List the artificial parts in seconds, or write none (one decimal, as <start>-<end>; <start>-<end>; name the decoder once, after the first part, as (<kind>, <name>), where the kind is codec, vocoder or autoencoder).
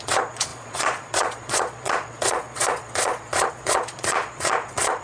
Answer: 0.0-5.0 (vocoder, Vocos)